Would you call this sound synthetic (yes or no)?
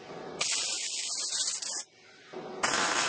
no